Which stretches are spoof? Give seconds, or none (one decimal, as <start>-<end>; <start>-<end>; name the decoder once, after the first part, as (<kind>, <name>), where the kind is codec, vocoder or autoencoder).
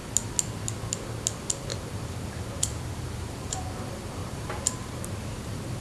1.7-3.6 (vocoder, BigVGAN v2); 4.2-5.8